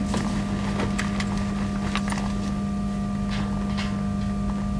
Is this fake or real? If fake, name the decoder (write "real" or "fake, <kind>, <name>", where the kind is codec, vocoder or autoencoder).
real